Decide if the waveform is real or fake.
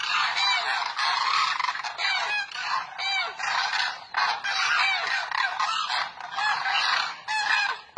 real